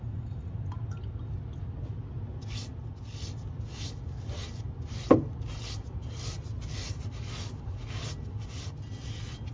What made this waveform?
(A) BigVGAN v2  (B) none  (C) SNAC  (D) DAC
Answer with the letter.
B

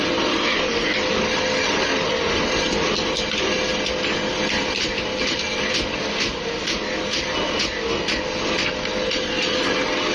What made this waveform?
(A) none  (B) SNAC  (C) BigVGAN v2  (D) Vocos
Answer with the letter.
A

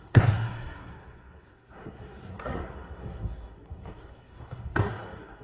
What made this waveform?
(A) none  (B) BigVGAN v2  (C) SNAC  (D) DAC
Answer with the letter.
C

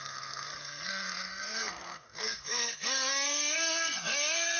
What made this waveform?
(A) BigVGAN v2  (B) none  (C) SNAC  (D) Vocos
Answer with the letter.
C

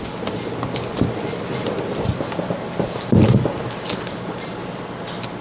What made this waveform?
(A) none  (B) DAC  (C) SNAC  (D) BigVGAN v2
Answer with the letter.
A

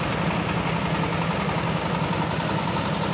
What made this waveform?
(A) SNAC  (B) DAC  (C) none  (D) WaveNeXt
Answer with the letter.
C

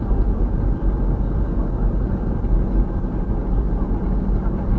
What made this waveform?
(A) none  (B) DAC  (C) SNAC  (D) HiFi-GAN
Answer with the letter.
A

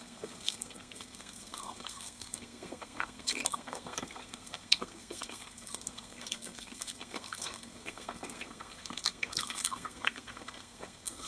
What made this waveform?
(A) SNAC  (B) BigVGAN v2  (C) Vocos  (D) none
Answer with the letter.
A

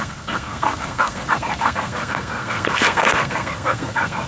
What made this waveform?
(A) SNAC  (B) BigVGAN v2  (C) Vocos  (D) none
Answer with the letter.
A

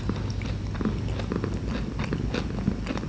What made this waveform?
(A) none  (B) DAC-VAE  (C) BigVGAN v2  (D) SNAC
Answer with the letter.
A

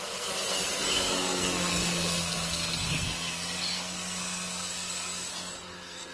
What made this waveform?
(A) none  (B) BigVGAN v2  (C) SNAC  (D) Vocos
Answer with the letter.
C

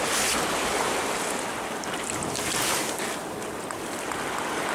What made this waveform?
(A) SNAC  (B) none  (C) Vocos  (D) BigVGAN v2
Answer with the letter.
B